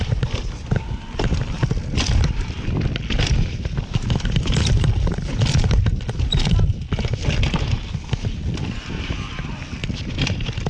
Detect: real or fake real